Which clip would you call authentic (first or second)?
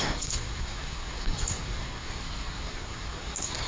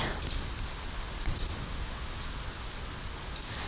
second